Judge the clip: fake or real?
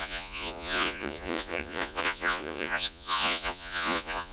fake